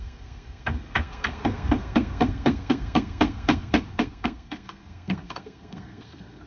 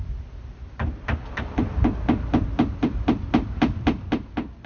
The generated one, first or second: first